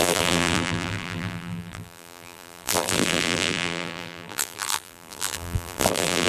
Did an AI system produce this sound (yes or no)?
yes